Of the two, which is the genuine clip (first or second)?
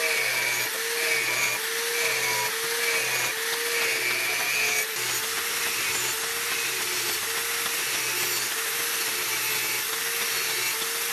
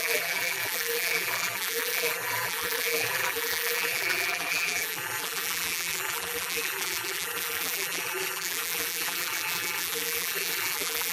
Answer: first